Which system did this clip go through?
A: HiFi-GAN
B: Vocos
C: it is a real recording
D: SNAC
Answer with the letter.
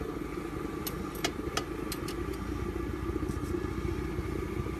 C